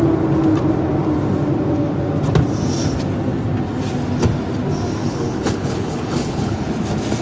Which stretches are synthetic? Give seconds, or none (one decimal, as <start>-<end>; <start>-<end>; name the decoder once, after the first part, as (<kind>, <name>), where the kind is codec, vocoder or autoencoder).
5.0-6.6 (codec, HILCodec)